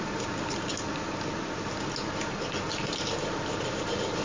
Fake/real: real